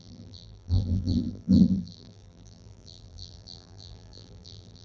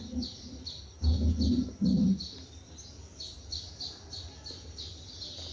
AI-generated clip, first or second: first